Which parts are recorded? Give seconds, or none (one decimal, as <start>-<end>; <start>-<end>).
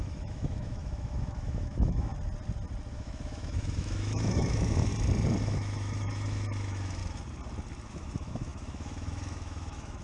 2.1-2.9; 4.9-5.4; 7.0-7.9